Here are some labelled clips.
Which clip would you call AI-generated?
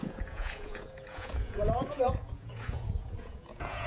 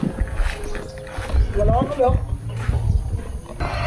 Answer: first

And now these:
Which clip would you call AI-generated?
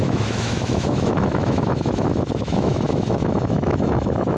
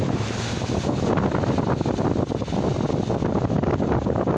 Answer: first